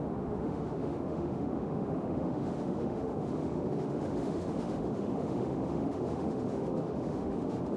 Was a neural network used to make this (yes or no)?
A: yes